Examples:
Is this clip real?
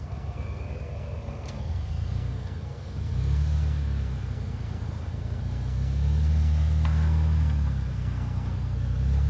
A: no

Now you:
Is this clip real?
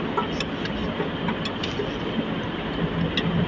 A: yes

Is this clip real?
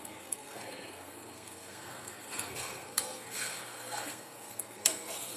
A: no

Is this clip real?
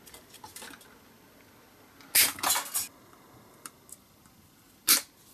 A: yes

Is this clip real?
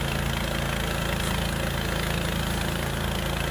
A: yes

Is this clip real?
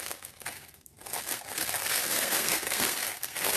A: no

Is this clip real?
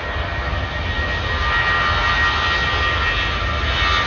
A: yes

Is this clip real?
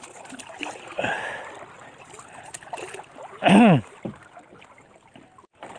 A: yes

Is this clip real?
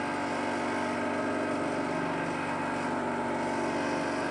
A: yes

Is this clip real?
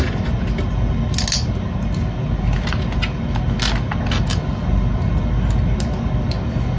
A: yes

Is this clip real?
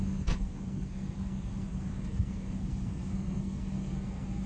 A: no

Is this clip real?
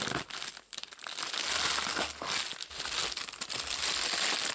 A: yes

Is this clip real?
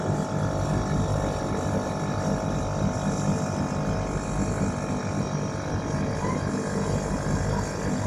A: yes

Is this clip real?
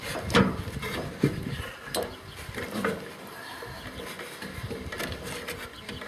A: yes